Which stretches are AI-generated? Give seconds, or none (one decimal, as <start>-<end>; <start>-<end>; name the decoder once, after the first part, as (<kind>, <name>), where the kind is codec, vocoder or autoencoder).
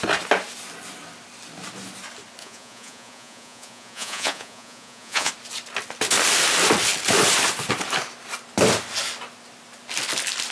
2.4-5.3 (vocoder, Vocos)